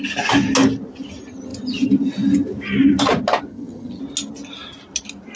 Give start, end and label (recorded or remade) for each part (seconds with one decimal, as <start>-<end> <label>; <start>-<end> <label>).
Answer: 0.0-3.5 recorded; 3.5-4.0 remade; 4.0-5.3 recorded